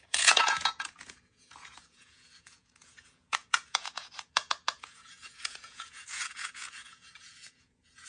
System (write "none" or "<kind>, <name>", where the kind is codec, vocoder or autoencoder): vocoder, Vocos